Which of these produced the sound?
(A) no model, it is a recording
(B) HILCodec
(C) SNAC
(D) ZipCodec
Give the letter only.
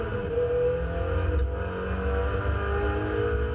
A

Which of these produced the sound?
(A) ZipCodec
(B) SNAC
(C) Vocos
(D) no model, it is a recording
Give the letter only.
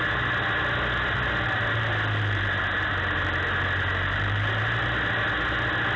D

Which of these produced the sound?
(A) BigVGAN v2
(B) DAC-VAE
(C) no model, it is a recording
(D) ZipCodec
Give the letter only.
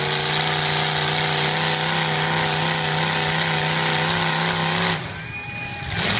C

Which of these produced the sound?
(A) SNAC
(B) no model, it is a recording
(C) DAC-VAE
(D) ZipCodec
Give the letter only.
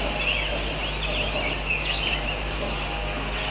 B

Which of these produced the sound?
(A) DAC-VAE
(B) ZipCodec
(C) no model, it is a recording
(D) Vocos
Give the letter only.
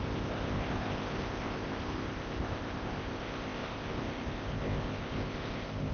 B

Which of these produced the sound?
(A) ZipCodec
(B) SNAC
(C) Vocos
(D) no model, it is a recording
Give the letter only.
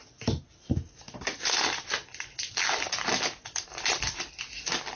D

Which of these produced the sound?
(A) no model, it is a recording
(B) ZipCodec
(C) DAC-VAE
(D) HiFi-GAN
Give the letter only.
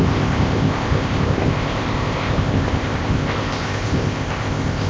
B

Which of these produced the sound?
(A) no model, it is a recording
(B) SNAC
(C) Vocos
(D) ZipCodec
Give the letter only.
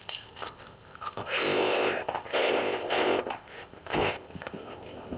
D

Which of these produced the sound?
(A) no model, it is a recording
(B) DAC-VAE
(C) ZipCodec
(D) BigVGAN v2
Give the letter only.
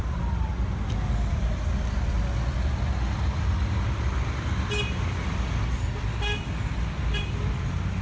A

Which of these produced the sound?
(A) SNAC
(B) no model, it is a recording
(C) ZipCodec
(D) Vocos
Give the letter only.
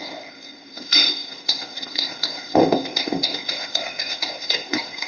C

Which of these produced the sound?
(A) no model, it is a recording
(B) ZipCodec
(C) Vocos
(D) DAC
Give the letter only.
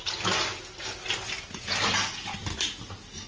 A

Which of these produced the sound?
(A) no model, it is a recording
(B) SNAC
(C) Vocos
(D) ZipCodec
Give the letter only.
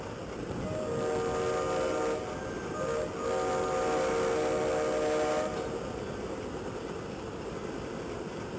A